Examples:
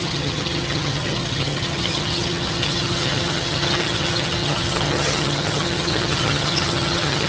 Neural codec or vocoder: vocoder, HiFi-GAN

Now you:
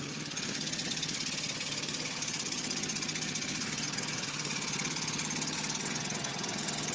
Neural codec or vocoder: vocoder, HiFi-GAN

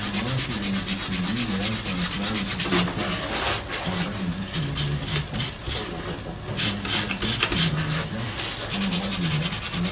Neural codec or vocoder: none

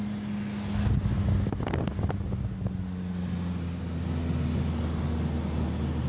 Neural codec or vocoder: none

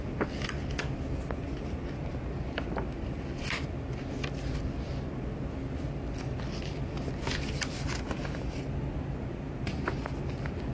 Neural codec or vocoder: none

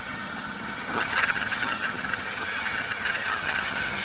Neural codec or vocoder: vocoder, HiFi-GAN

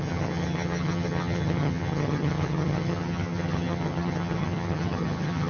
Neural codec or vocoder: vocoder, HiFi-GAN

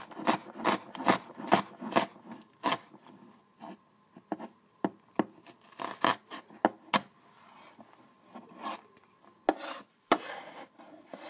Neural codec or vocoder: none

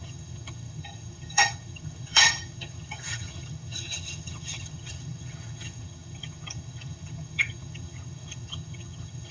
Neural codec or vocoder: vocoder, HiFi-GAN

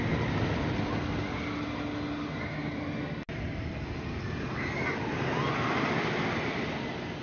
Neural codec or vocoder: none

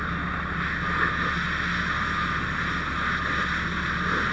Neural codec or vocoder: none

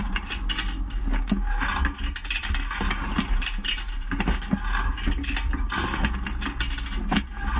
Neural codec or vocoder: none